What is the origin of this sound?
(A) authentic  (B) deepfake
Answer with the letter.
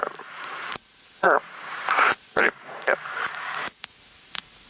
B